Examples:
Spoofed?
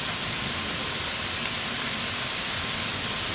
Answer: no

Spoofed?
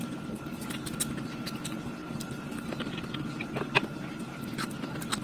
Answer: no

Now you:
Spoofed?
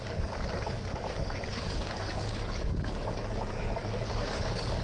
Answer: yes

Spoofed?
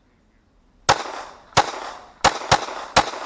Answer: no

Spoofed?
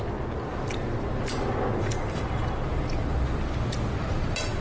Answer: no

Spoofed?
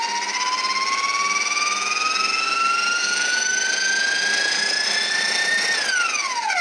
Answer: no